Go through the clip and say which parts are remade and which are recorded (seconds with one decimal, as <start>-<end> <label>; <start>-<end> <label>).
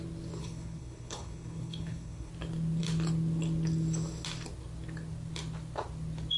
0.0-0.4 recorded; 0.4-2.3 remade; 2.3-6.4 recorded